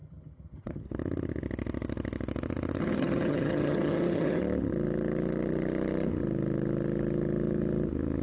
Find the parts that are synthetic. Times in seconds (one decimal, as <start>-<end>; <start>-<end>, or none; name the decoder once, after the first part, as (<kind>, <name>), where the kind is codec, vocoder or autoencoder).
0.0-0.8 (vocoder, HiFi-GAN); 2.8-4.4